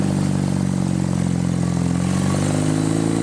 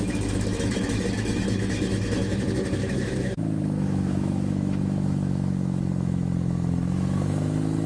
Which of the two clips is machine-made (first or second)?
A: second